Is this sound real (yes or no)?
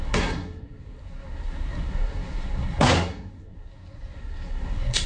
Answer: no